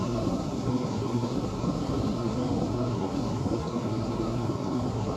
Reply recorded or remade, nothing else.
remade